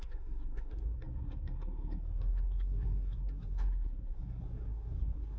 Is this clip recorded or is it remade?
remade